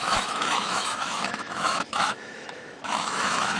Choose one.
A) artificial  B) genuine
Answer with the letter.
A